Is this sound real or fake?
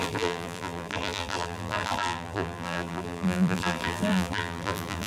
fake